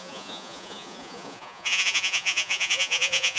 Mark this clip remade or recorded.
remade